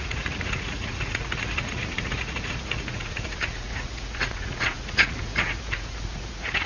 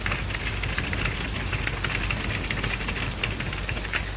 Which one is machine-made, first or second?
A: first